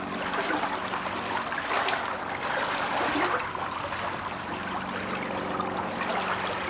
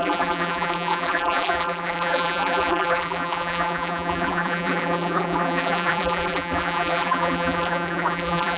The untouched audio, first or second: first